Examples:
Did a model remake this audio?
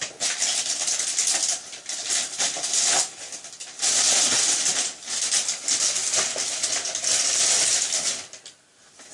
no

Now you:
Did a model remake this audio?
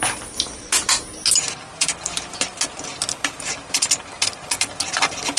no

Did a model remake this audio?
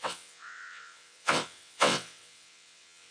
yes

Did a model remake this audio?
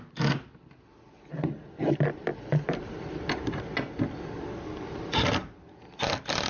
no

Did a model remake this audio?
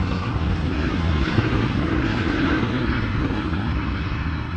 yes